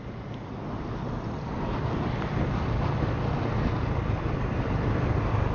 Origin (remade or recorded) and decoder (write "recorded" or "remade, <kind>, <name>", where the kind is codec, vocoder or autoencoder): recorded